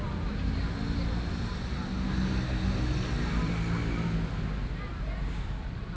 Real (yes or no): yes